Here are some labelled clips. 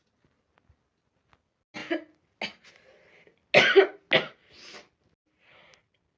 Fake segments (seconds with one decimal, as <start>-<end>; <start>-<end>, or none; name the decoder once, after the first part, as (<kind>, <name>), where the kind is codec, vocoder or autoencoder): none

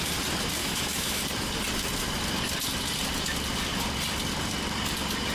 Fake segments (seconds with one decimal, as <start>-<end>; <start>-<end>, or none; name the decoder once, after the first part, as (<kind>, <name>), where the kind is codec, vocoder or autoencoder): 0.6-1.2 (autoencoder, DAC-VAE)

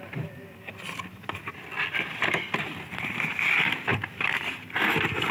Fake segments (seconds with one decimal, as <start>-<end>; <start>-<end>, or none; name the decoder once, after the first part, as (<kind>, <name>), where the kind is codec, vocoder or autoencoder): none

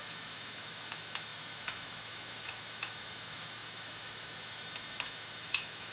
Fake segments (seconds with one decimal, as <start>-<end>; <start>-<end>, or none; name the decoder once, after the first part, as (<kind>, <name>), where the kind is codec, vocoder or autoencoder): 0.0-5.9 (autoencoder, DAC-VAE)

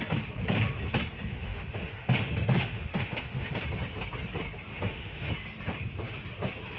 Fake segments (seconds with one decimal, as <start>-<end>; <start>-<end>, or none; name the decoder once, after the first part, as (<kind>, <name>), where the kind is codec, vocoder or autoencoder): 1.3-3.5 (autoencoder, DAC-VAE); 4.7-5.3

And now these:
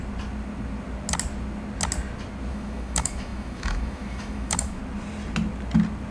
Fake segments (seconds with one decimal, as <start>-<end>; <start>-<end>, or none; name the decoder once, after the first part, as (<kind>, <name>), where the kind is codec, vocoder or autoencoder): 2.5-4.8 (autoencoder, DAC-VAE)